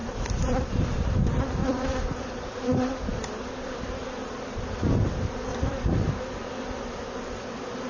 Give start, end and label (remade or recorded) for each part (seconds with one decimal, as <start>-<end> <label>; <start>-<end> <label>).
0.0-0.6 remade; 0.6-1.6 recorded; 1.6-2.2 remade; 2.2-5.5 recorded; 5.5-6.1 remade; 6.1-7.9 recorded